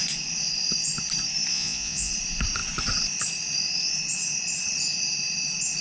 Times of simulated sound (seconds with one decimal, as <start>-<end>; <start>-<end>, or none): 1.5-2.1